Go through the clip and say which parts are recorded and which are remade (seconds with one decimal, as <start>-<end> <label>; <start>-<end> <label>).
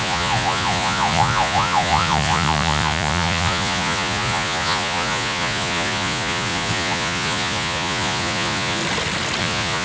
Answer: 0.0-8.8 remade; 8.8-9.4 recorded; 9.4-9.8 remade